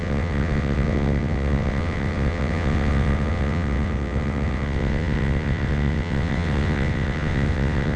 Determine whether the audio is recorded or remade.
remade